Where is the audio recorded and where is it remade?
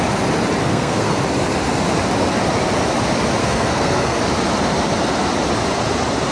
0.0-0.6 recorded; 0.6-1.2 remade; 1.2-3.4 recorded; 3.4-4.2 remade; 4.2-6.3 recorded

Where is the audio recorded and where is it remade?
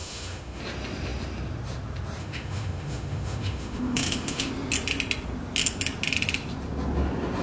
0.0-0.6 remade; 0.6-2.2 recorded; 2.2-4.5 remade; 4.5-7.4 recorded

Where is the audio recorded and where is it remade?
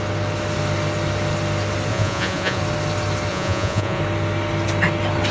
0.0-1.9 recorded; 1.9-2.6 remade; 2.6-3.3 recorded; 3.3-4.0 remade; 4.0-5.3 recorded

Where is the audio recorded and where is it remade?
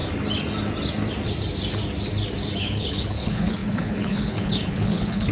0.0-2.6 recorded; 2.6-5.3 remade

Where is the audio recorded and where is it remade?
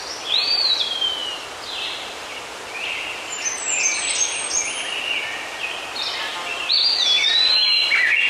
0.0-6.3 recorded; 6.3-8.3 remade